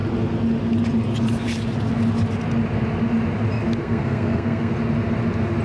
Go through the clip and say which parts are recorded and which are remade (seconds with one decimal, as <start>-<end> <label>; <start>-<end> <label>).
0.0-3.8 recorded; 3.8-4.7 remade; 4.7-5.6 recorded